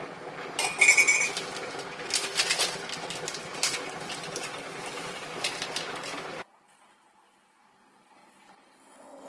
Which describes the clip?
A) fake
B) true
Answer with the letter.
B